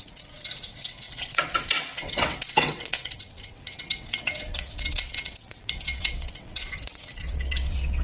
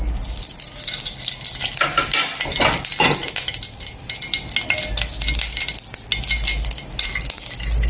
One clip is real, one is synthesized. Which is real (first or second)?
second